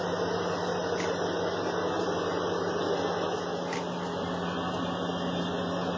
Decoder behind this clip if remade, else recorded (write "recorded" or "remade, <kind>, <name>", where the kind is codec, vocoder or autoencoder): recorded